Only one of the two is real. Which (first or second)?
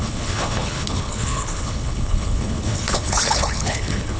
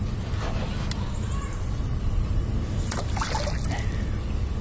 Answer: second